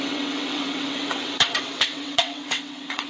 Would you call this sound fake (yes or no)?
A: yes